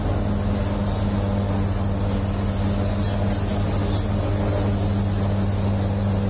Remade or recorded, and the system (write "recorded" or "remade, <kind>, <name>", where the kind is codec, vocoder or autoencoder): recorded